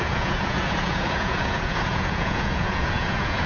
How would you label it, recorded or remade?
remade